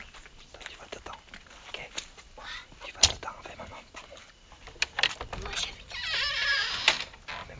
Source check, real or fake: real